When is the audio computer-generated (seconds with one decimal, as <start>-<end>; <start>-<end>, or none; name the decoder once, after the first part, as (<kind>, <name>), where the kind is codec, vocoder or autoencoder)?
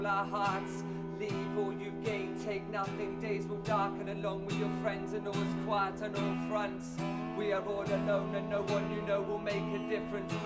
none